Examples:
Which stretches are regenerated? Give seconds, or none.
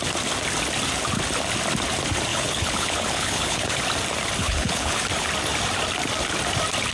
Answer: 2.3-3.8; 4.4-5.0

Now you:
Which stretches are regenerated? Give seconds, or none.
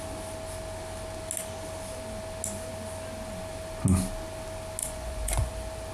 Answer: 4.8-5.5